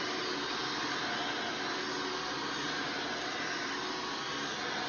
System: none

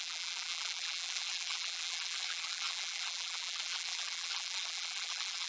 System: vocoder, BigVGAN v2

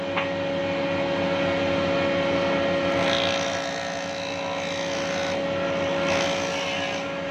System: none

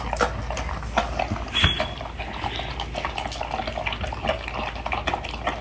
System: none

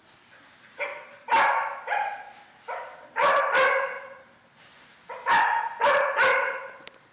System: none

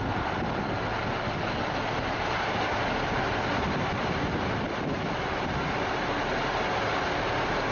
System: none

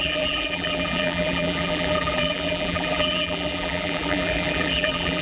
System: vocoder, BigVGAN v2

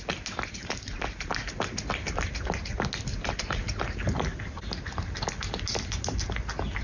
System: none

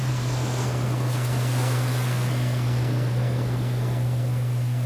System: codec, SNAC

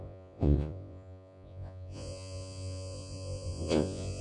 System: vocoder, Vocos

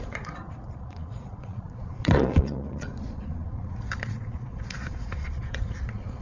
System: vocoder, Vocos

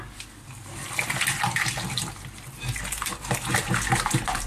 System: none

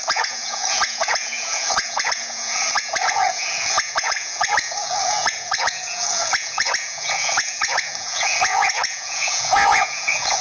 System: vocoder, Vocos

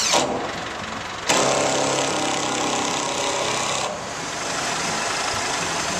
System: none